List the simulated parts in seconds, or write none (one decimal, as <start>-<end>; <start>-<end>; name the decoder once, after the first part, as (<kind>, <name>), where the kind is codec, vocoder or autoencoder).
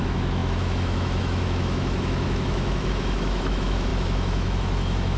0.0-5.2 (autoencoder, DAC-VAE)